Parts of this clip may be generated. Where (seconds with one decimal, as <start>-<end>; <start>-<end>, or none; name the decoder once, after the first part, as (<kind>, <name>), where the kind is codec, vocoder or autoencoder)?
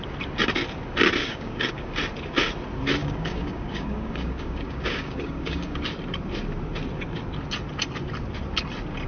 1.2-1.9 (codec, DAC); 3.0-5.8